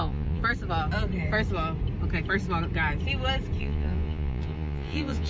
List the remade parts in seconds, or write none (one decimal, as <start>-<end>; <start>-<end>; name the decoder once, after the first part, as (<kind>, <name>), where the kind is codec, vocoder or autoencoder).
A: 0.0-0.4 (vocoder, Vocos); 3.6-5.3